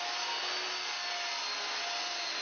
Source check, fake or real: real